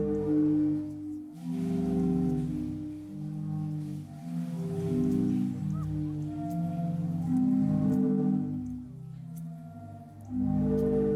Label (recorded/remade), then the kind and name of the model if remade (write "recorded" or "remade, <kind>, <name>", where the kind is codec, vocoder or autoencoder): recorded